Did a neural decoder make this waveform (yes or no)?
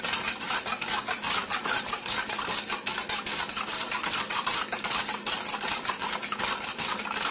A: no